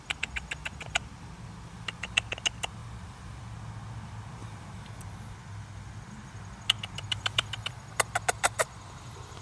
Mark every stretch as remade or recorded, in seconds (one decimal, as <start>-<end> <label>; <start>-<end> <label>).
0.0-2.8 recorded; 2.8-3.4 remade; 3.4-4.4 recorded; 4.4-4.9 remade; 4.9-9.4 recorded